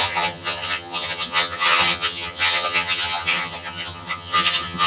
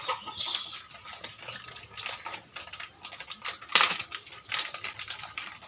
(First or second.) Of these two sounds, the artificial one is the first